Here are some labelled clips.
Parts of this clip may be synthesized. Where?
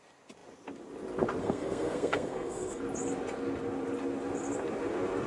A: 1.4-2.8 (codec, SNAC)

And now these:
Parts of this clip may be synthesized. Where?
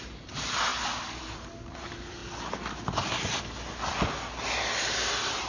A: 0.0-0.7 (vocoder, BigVGAN v2); 1.3-2.2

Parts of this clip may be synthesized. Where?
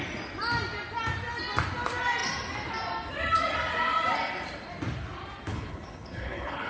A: 5.5-6.7 (codec, HILCodec)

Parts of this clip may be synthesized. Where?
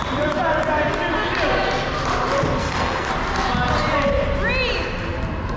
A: 2.6-3.1 (codec, SNAC)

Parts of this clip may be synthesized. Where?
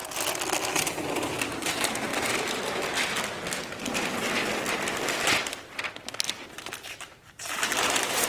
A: 0.7-2.1 (vocoder, BigVGAN v2); 6.8-8.3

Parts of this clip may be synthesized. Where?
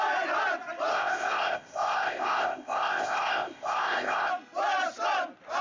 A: 0.9-4.3 (codec, ZipCodec)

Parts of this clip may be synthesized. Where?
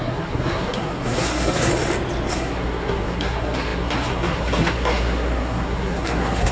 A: 0.0-1.7 (codec, SNAC); 2.3-6.5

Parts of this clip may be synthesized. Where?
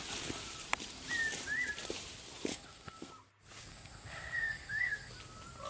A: 2.5-3.1 (codec, SNAC); 3.7-5.1